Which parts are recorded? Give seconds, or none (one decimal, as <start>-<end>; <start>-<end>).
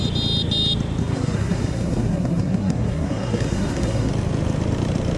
0.0-1.0; 4.1-5.2